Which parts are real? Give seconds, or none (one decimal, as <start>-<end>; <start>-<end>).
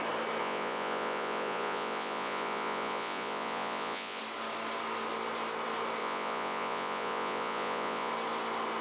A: 0.0-0.4; 4.2-6.0; 8.1-8.8